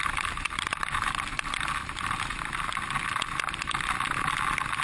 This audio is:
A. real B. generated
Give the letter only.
A